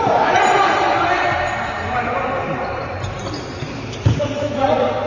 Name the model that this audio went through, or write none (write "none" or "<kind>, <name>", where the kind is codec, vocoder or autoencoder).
vocoder, BigVGAN v2